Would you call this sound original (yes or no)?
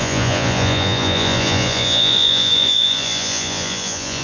no